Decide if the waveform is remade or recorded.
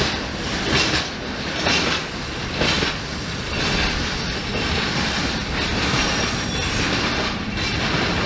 recorded